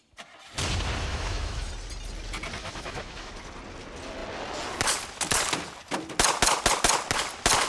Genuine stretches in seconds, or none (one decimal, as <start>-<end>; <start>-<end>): 0.0-1.1; 1.7-2.6; 3.3-7.7